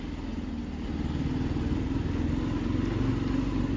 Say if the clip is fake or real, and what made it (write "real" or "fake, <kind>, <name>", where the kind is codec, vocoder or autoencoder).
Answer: real